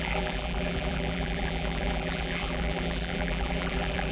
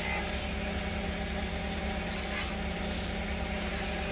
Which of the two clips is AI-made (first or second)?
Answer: first